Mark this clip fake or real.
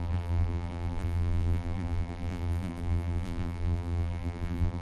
fake